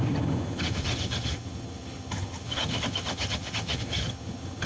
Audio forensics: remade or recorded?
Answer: remade